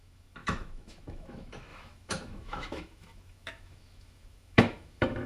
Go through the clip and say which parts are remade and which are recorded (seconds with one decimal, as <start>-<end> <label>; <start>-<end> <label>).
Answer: 0.0-5.3 remade